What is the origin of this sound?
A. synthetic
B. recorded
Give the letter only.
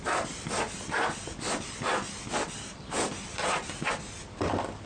B